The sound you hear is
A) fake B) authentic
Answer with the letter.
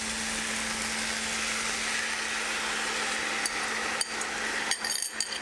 B